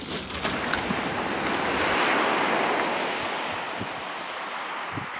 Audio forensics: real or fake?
real